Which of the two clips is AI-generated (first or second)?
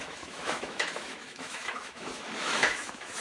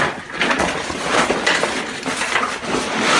first